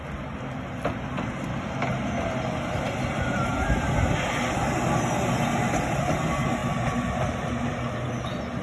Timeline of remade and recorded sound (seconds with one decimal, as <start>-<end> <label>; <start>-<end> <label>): 0.0-8.6 recorded